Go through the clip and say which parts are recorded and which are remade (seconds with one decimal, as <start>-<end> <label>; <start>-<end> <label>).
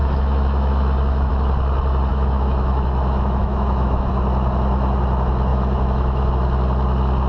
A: 0.0-1.3 remade; 1.3-2.1 recorded; 2.1-4.1 remade; 4.1-5.5 recorded; 5.5-6.3 remade; 6.3-7.3 recorded